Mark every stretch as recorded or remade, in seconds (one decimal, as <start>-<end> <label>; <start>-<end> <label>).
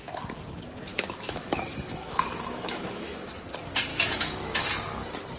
0.0-0.9 recorded; 0.9-3.4 remade; 3.4-3.9 recorded; 3.9-4.6 remade; 4.6-5.4 recorded